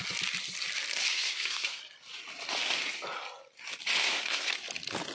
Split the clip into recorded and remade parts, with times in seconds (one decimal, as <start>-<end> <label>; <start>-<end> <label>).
0.0-1.1 recorded; 1.1-1.8 remade; 1.8-4.0 recorded; 4.0-4.5 remade; 4.5-5.1 recorded